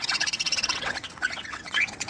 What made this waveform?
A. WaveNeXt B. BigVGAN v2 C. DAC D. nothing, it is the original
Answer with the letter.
A